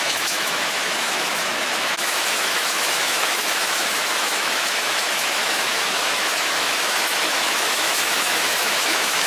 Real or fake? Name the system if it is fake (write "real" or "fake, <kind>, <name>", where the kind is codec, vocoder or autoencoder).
fake, autoencoder, DAC-VAE